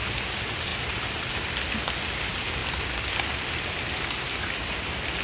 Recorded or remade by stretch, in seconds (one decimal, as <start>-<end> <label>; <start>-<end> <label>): 0.0-2.6 recorded; 2.6-3.6 remade; 3.6-5.2 recorded